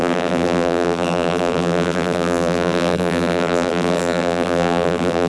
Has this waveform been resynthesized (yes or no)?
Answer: yes